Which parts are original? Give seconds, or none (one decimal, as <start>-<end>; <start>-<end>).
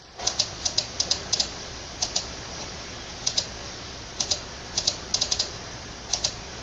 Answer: none